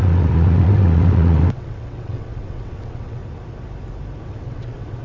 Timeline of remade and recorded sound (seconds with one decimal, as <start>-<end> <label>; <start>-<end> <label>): 0.0-3.2 remade; 3.2-4.2 recorded; 4.2-5.0 remade